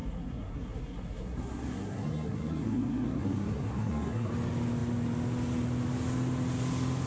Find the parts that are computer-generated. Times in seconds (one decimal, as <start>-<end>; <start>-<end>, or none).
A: 0.0-4.3